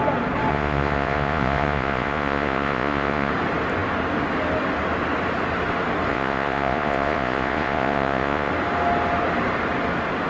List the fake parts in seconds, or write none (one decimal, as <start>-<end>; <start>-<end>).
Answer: 0.5-3.3; 6.1-8.5